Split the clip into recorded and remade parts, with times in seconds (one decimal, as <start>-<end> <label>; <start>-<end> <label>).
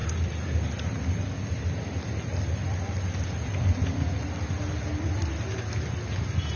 0.0-6.6 recorded